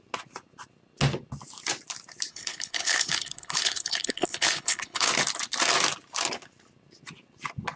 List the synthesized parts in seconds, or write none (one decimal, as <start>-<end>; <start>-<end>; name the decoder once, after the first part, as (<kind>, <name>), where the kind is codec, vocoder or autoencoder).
2.3-5.1 (codec, HILCodec)